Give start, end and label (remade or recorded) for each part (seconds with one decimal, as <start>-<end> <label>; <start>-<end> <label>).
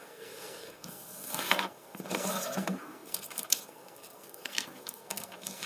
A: 0.0-5.7 remade